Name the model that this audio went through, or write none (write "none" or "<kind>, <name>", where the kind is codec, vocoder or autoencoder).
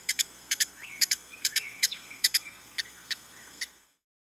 codec, SNAC